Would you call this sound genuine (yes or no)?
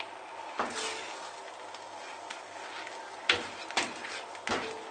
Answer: yes